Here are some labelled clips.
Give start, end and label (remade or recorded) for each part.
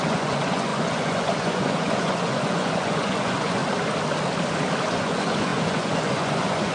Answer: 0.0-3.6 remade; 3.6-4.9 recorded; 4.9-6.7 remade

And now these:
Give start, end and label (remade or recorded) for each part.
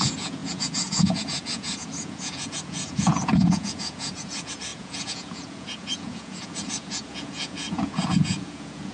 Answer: 0.0-8.9 remade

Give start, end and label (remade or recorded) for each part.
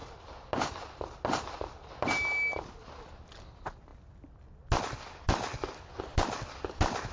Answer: 0.0-7.1 recorded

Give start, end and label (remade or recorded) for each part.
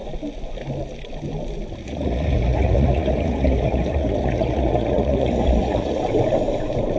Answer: 0.0-1.8 recorded; 1.8-6.0 remade; 6.0-7.0 recorded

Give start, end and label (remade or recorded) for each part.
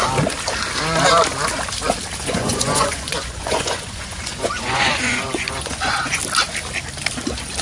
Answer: 0.0-2.2 recorded; 2.2-6.2 remade; 6.2-7.6 recorded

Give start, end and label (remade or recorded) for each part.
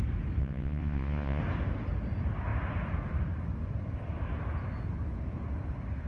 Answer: 0.0-0.4 recorded; 0.4-1.4 remade; 1.4-6.1 recorded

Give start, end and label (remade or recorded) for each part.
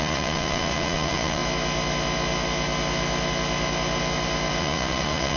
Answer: 0.0-1.4 remade; 1.4-4.6 recorded; 4.6-5.4 remade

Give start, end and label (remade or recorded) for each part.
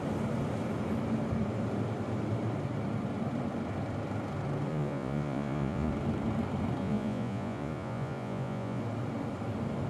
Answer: 0.0-4.7 recorded; 4.7-5.9 remade; 5.9-6.8 recorded; 6.8-8.8 remade; 8.8-9.9 recorded